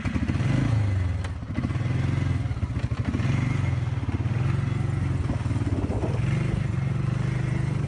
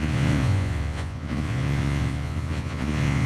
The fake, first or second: second